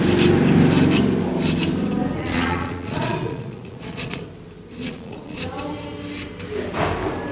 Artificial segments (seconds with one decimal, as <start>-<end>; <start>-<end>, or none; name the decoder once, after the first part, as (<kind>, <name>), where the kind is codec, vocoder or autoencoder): 2.2-4.2 (vocoder, Vocos); 4.8-5.4